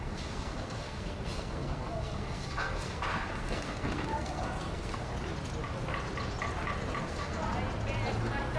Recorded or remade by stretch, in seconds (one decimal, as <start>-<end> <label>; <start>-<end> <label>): 0.0-5.1 remade; 5.1-7.0 recorded; 7.0-7.4 remade; 7.4-8.6 recorded

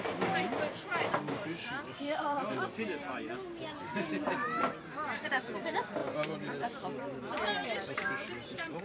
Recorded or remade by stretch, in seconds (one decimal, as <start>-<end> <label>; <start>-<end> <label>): 0.0-0.9 recorded; 0.9-3.2 remade; 3.2-7.8 recorded; 7.8-8.8 remade

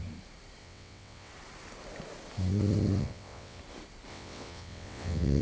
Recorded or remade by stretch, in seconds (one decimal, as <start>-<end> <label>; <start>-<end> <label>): 0.0-0.6 recorded; 0.6-1.3 remade; 1.3-3.0 recorded; 3.0-3.6 remade; 3.6-4.1 recorded; 4.1-5.4 remade

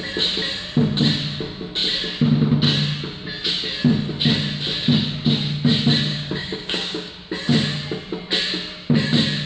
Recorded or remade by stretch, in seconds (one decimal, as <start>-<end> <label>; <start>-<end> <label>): 0.0-6.1 recorded; 6.1-7.1 remade; 7.1-9.5 recorded

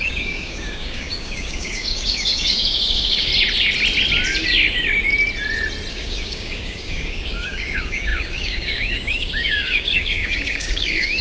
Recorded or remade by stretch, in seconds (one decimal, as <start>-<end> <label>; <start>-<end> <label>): 0.0-3.3 remade; 3.3-5.9 recorded; 5.9-11.2 remade

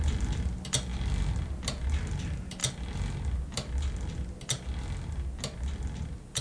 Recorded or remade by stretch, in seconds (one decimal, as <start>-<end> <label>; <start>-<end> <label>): 0.0-6.4 recorded

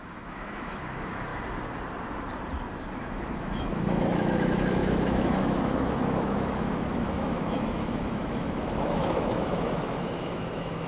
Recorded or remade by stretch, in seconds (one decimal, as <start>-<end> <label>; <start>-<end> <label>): 0.0-1.3 remade; 1.3-3.0 recorded; 3.0-10.9 remade

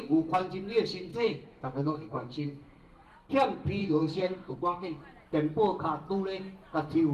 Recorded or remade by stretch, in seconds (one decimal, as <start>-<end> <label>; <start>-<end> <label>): 0.0-1.1 recorded; 1.1-3.3 remade; 3.3-3.8 recorded; 3.8-5.0 remade; 5.0-7.1 recorded